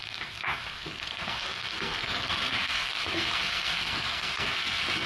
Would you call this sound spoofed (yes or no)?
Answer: yes